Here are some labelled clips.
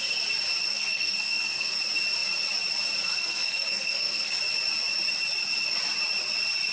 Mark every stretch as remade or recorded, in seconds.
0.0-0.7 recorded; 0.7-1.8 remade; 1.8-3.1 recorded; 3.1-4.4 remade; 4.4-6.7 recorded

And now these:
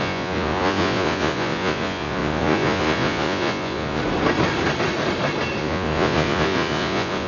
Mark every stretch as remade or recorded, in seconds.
0.0-4.0 remade; 4.0-5.6 recorded; 5.6-7.3 remade

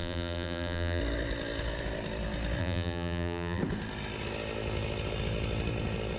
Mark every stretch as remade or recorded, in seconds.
0.0-1.0 remade; 1.0-2.6 recorded; 2.6-3.6 remade; 3.6-6.2 recorded

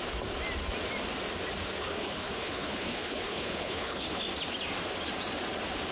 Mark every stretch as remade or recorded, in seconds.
0.0-1.8 recorded; 1.8-4.2 remade; 4.2-5.9 recorded

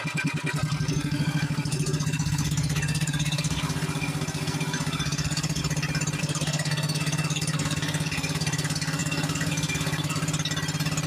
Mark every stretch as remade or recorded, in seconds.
0.0-5.6 remade; 5.6-6.2 recorded; 6.2-10.2 remade; 10.2-11.1 recorded

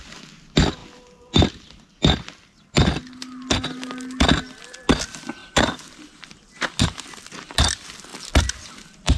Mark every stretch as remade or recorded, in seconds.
0.0-9.2 recorded

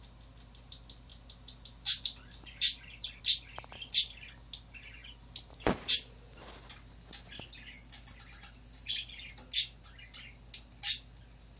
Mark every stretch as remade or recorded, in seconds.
0.0-1.1 recorded; 1.1-3.2 remade; 3.2-11.6 recorded

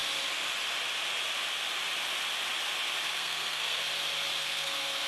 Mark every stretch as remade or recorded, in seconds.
0.0-3.1 recorded; 3.1-3.8 remade; 3.8-4.4 recorded; 4.4-5.1 remade